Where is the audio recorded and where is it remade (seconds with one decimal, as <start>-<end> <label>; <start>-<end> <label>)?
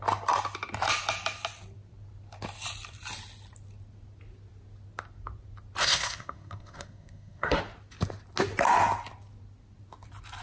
0.0-5.8 recorded; 5.8-7.6 remade; 7.6-10.4 recorded